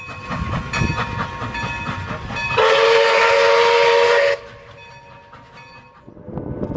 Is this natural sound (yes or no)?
yes